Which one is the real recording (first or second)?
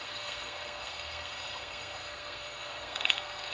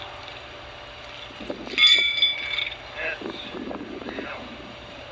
second